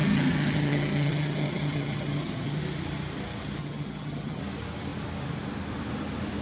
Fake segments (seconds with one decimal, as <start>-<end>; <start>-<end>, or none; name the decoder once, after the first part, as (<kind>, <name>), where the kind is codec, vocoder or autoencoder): 0.0-2.6 (vocoder, HiFi-GAN); 3.6-4.4